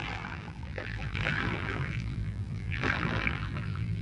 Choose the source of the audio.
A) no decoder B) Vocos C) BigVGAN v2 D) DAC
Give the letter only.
C